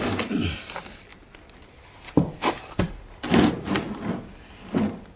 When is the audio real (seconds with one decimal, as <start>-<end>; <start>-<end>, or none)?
0.0-5.2